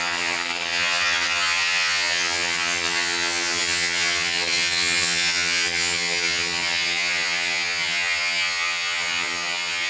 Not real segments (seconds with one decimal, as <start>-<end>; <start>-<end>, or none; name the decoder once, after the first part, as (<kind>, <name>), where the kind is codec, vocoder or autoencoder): 0.0-9.9 (vocoder, HiFi-GAN)